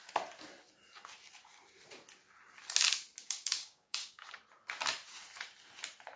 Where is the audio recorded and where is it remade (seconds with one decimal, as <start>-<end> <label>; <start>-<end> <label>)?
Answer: 0.0-3.2 recorded; 3.2-4.3 remade; 4.3-6.2 recorded